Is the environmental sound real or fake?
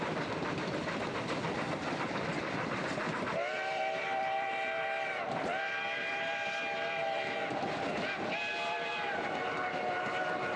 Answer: fake